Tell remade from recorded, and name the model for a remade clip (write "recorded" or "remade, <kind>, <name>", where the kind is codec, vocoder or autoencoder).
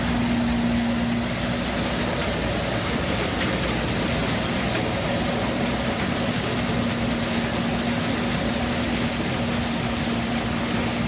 recorded